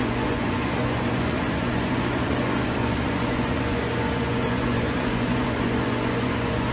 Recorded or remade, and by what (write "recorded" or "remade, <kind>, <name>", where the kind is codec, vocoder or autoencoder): remade, vocoder, Vocos